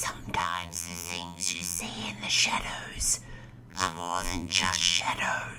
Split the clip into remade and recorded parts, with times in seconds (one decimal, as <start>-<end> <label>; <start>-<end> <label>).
0.0-0.4 recorded; 0.4-1.8 remade; 1.8-3.7 recorded; 3.7-5.0 remade; 5.0-5.6 recorded